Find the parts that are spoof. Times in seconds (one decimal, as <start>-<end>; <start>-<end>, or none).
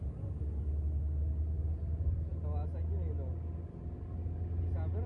none